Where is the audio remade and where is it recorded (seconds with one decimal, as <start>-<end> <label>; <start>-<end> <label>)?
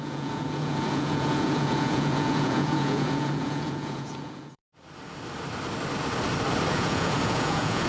0.0-4.6 remade; 4.6-6.7 recorded; 6.7-7.9 remade